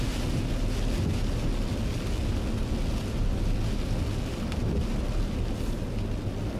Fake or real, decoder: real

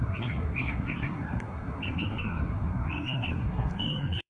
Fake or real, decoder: fake, codec, SNAC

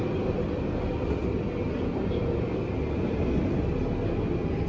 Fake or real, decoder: real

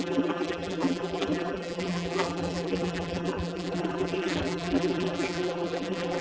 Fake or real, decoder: fake, vocoder, BigVGAN v2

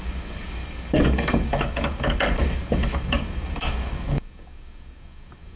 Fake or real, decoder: fake, codec, DAC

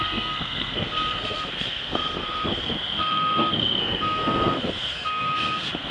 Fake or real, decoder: fake, codec, SNAC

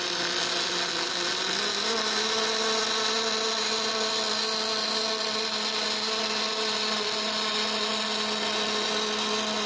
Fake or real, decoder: real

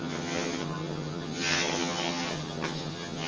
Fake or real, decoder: fake, vocoder, HiFi-GAN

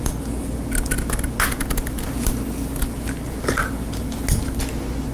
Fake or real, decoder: real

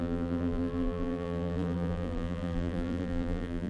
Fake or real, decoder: fake, vocoder, BigVGAN v2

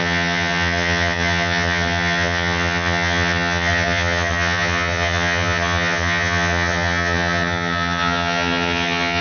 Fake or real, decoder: fake, vocoder, HiFi-GAN